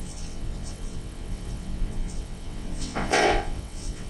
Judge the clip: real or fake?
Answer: fake